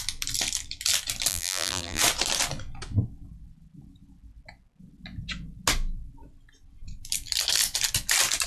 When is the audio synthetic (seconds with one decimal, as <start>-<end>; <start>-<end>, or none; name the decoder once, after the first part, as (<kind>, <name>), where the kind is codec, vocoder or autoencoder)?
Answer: 1.3-2.0 (vocoder, BigVGAN v2)